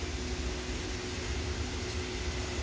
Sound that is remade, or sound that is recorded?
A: recorded